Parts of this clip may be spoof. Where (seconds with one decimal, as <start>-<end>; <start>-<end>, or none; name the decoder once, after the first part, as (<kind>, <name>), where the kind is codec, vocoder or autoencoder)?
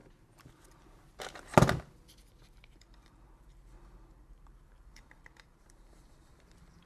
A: 2.7-6.9 (vocoder, BigVGAN v2)